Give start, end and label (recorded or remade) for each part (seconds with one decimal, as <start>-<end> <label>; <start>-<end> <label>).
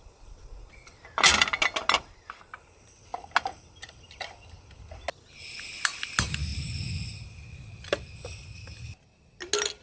0.0-9.8 recorded